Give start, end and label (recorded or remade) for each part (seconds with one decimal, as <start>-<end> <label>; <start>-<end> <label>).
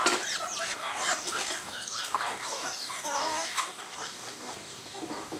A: 0.0-0.6 recorded; 0.6-5.4 remade